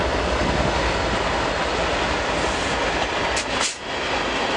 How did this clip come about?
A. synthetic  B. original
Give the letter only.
B